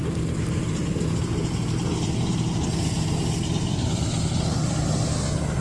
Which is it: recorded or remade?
recorded